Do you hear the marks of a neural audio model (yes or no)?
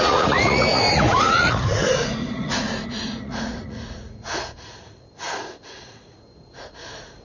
yes